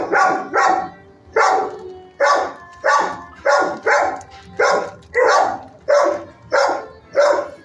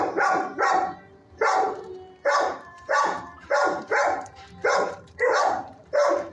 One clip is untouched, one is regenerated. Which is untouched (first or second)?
first